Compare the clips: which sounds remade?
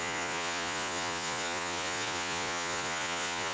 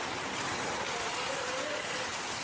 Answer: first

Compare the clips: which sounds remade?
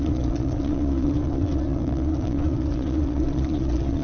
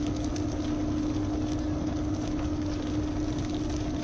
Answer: first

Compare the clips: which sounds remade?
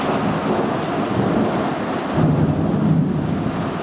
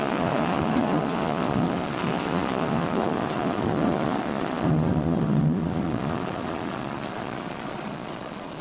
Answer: second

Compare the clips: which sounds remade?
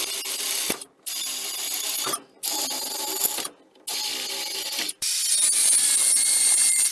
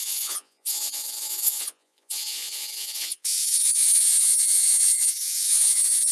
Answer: second